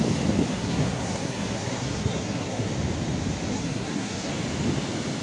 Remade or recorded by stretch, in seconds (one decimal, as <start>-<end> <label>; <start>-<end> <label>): 0.0-0.5 recorded; 0.5-2.7 remade; 2.7-3.5 recorded; 3.5-4.3 remade; 4.3-5.2 recorded